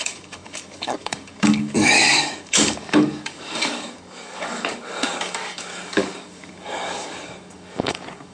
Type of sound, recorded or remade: remade